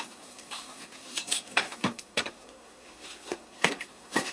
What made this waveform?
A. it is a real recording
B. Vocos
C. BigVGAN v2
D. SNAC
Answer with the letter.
D